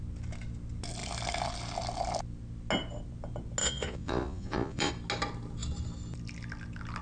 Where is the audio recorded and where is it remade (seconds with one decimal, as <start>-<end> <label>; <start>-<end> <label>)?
0.0-3.6 recorded; 3.6-4.9 remade; 4.9-7.0 recorded